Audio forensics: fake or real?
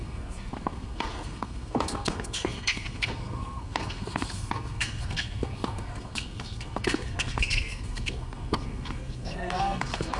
fake